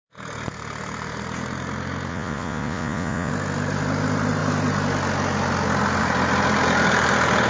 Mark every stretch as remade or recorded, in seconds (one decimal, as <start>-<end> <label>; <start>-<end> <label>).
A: 0.0-2.1 recorded; 2.1-3.3 remade; 3.3-7.5 recorded